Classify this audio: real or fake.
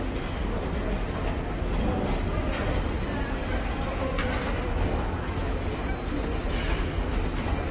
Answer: real